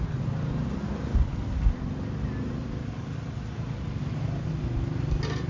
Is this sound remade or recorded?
recorded